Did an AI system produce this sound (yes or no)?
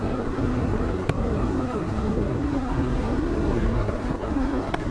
yes